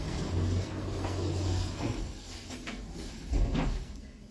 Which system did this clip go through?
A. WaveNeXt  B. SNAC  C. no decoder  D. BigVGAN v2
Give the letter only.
B